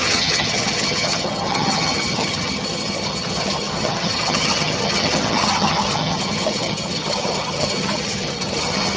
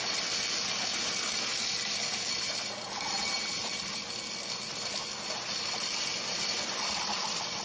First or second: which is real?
second